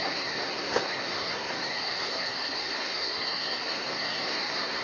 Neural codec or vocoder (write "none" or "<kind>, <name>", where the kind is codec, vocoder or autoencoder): codec, SNAC